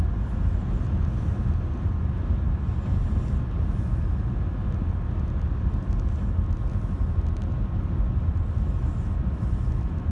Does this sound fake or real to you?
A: real